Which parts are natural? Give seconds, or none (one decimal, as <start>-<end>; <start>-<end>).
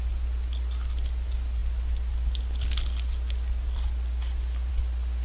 0.0-5.2